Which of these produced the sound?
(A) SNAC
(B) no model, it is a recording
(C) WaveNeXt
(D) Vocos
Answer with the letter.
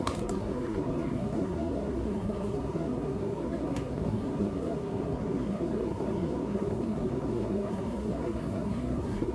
A